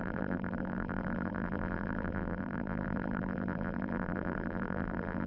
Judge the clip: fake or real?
fake